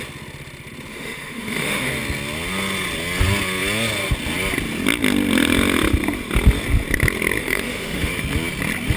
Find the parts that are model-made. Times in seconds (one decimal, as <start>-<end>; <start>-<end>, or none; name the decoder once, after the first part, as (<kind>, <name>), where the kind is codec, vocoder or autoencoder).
0.9-1.9 (autoencoder, DAC-VAE); 7.4-8.1